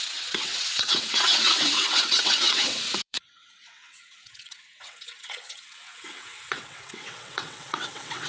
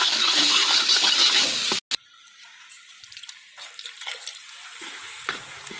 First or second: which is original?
second